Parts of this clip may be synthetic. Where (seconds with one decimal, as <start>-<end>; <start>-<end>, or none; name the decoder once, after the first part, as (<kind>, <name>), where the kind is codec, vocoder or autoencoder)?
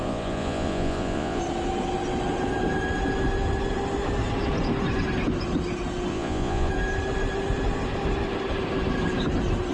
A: 0.0-1.4 (vocoder, Vocos); 6.1-6.7